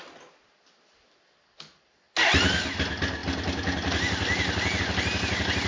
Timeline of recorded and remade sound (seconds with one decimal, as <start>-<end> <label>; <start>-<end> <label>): 0.0-5.7 recorded